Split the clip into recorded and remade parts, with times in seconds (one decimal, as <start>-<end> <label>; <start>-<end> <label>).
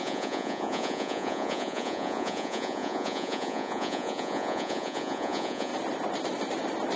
0.0-5.7 remade; 5.7-7.0 recorded